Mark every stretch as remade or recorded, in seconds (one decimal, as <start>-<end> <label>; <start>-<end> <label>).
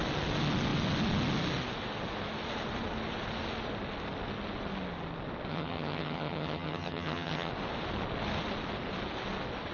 0.0-5.5 recorded; 5.5-7.5 remade; 7.5-9.7 recorded